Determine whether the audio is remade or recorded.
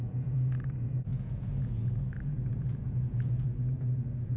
remade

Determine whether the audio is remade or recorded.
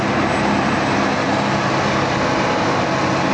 recorded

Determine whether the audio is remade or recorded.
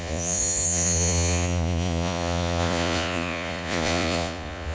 remade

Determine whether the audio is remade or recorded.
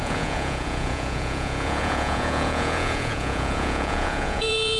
remade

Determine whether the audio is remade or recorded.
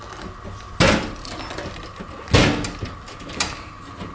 recorded